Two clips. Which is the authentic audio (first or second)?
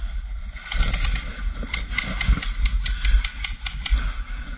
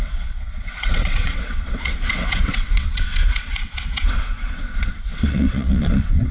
first